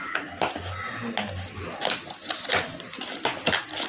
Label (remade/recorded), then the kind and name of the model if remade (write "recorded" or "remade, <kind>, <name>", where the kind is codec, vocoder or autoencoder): recorded